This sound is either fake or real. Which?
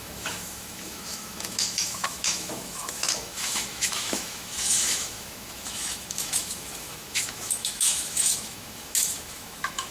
fake